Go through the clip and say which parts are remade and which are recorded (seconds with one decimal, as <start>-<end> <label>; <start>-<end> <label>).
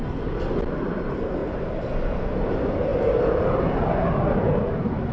0.0-5.1 recorded